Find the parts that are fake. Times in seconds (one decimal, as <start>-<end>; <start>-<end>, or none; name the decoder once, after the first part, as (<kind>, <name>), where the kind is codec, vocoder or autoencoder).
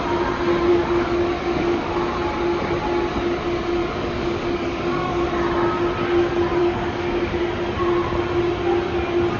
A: 0.7-1.9 (codec, DAC); 3.8-5.3; 6.6-7.4